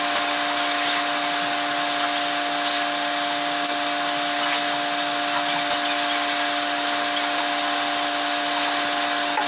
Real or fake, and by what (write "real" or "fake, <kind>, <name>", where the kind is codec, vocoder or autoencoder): real